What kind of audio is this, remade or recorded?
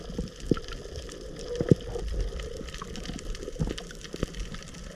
recorded